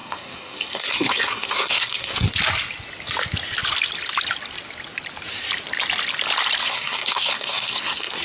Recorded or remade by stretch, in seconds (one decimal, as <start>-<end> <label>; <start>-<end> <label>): 0.0-2.3 remade; 2.3-6.6 recorded; 6.6-8.2 remade